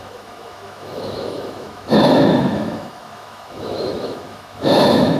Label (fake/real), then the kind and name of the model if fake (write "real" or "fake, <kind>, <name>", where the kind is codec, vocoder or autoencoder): fake, autoencoder, DAC-VAE